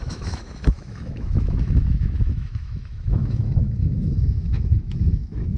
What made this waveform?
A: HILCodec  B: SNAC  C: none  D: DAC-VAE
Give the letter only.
D